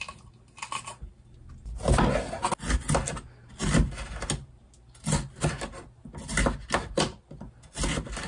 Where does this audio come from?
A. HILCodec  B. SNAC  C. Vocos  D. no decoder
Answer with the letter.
D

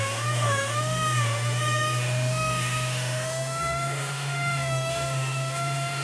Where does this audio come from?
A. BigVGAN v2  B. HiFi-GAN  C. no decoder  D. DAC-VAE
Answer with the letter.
D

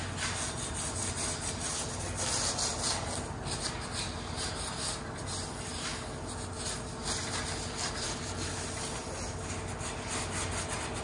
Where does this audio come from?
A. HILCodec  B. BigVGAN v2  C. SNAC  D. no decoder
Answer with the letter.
D